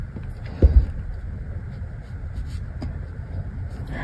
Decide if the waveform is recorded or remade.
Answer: recorded